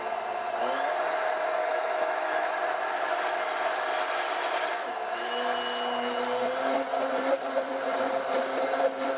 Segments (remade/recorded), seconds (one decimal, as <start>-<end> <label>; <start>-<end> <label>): 0.0-1.6 recorded; 1.6-2.5 remade; 2.5-9.2 recorded